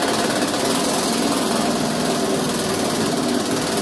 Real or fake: real